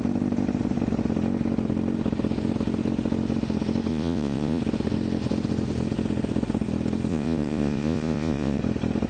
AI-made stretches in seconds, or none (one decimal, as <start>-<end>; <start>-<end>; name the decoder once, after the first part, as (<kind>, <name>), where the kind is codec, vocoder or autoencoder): 3.9-4.6 (vocoder, Vocos); 7.1-8.6